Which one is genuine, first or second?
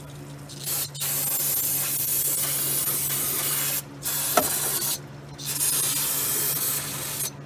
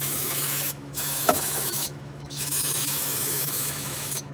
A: first